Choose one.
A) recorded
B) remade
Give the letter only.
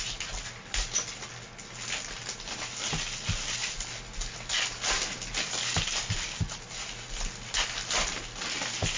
A